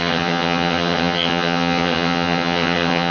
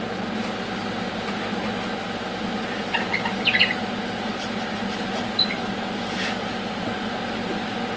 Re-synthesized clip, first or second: first